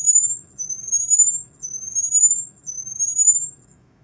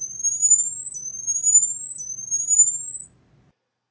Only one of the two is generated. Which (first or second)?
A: first